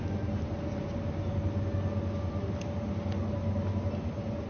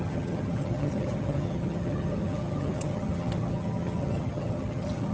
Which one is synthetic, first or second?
second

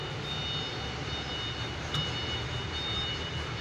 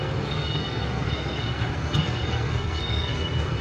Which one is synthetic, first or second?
second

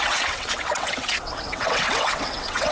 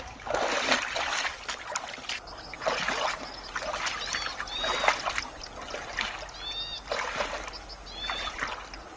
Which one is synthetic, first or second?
first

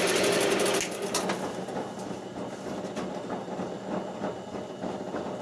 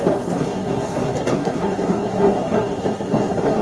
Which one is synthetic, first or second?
second